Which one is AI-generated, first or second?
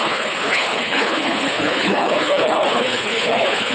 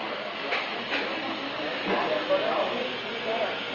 first